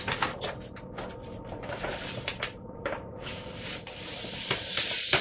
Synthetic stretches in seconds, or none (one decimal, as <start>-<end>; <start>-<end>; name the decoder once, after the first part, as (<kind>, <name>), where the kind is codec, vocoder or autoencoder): 2.3-5.2 (vocoder, BigVGAN v2)